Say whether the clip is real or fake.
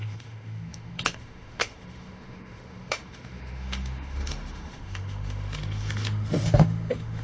fake